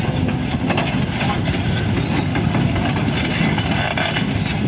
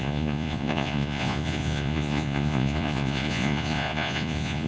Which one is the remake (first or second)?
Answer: second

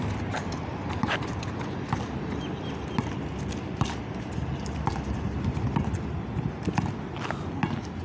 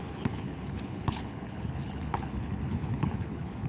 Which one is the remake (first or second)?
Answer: second